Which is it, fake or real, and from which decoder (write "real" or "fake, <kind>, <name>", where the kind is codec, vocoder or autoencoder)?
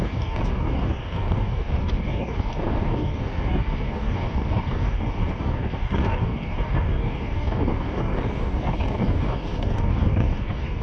fake, codec, DAC